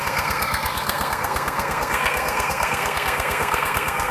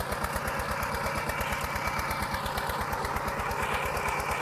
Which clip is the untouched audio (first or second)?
second